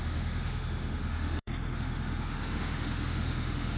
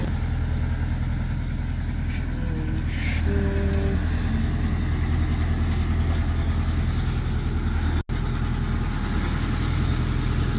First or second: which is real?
second